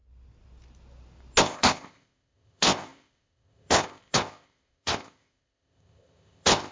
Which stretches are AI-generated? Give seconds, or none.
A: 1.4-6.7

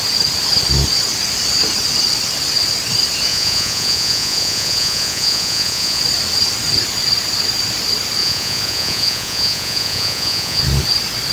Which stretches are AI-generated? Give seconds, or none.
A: 3.3-6.0; 8.2-10.6

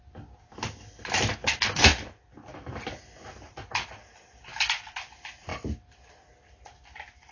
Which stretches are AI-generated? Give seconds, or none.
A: none